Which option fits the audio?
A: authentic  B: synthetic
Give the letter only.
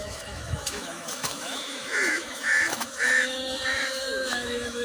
B